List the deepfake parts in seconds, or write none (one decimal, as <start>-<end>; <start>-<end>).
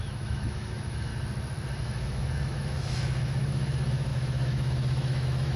0.0-1.1; 1.8-5.6